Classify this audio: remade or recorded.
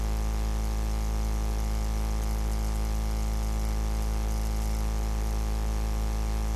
recorded